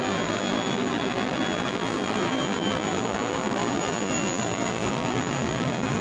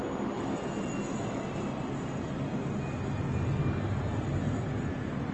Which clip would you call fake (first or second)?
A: first